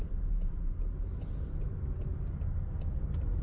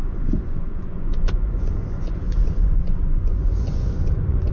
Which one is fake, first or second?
second